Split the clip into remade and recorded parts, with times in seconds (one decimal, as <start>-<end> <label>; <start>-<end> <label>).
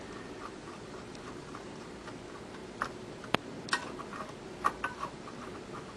0.0-0.4 recorded; 0.4-1.9 remade; 1.9-6.0 recorded